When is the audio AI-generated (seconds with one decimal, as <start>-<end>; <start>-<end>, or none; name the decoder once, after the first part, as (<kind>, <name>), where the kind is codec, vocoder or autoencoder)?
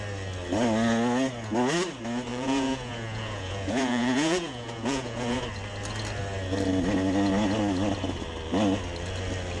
2.3-5.4 (vocoder, Vocos)